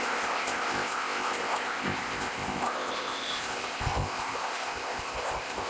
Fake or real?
fake